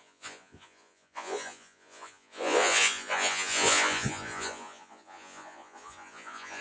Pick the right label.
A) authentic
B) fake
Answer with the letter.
B